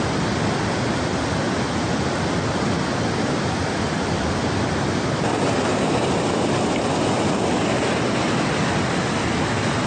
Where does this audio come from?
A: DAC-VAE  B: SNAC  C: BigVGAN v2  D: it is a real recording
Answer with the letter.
D